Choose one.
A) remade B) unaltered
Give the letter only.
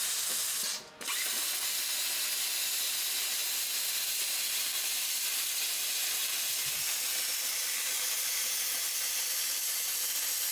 B